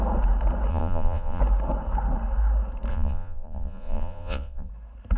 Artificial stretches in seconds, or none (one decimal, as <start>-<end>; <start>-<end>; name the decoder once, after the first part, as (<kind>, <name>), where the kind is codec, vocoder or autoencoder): 0.7-1.4 (vocoder, Vocos); 2.9-4.7

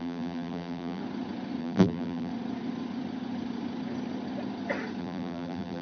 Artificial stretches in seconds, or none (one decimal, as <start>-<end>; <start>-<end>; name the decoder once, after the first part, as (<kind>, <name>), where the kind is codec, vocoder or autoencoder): 0.0-1.0 (vocoder, BigVGAN v2); 1.6-2.3; 5.0-5.8

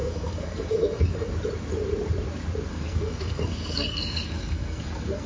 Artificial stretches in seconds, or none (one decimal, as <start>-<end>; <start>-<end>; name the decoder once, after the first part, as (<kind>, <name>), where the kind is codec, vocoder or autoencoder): 0.0-1.3 (codec, SNAC); 2.7-5.3